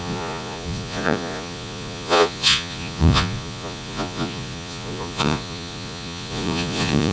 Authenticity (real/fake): fake